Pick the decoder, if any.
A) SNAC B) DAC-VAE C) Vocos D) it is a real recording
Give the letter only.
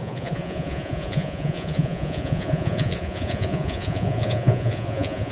C